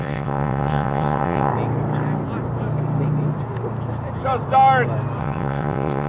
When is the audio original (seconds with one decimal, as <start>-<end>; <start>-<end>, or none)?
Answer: 1.5-5.2